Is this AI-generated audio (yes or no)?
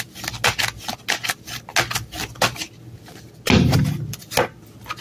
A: no